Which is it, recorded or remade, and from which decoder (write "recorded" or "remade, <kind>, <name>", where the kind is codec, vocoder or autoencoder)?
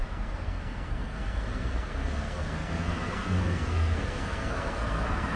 remade, codec, SNAC